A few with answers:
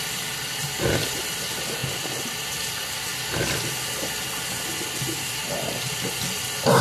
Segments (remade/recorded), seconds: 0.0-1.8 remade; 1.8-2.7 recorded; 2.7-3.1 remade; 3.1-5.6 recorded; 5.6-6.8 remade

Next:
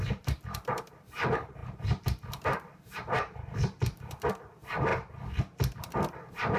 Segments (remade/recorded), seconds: 0.0-4.9 remade; 4.9-5.8 recorded; 5.8-6.6 remade